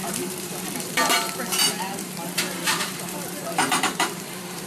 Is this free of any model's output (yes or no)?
no